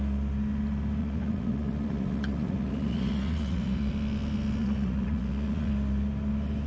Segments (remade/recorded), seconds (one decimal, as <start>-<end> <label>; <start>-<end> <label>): 0.0-1.0 recorded; 1.0-3.9 remade; 3.9-4.6 recorded; 4.6-5.7 remade; 5.7-6.7 recorded